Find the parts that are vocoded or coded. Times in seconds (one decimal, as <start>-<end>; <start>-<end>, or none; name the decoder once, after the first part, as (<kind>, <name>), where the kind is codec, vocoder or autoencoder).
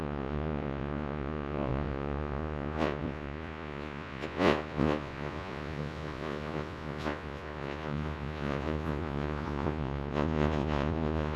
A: 0.0-11.4 (vocoder, Vocos)